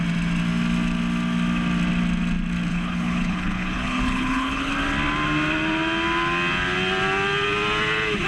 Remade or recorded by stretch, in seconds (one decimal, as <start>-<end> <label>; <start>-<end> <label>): 0.0-2.7 recorded; 2.7-4.7 remade; 4.7-8.3 recorded